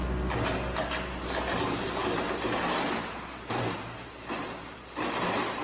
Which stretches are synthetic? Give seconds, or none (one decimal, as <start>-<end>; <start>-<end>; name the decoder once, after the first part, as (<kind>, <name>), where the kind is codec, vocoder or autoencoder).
none